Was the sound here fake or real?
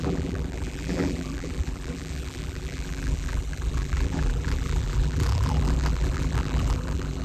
fake